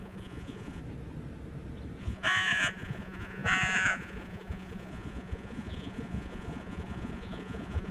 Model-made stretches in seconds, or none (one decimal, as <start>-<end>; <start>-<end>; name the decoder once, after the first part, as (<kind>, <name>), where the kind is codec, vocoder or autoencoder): 0.0-0.8 (vocoder, Vocos); 2.0-7.9